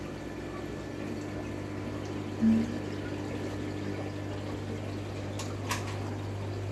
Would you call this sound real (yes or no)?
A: yes